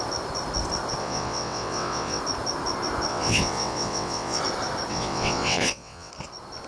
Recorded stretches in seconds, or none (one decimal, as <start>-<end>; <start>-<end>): 0.0-1.0; 2.2-3.1; 4.4-4.9; 6.1-6.7